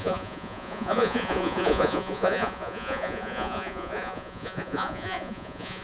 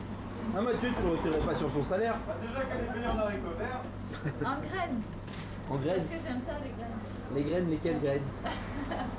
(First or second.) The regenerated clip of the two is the first